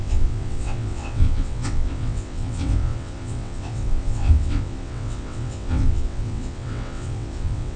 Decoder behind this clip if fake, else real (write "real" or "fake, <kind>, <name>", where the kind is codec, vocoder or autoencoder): fake, vocoder, WaveNeXt